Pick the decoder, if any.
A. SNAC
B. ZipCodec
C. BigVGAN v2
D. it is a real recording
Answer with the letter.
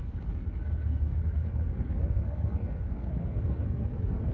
A